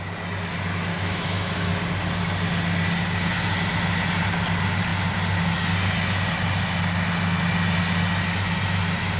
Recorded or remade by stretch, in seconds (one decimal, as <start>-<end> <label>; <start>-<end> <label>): 0.0-0.9 recorded; 0.9-1.7 remade; 1.7-9.2 recorded